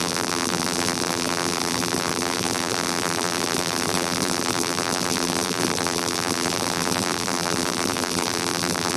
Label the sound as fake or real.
fake